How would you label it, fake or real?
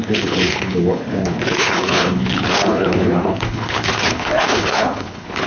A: fake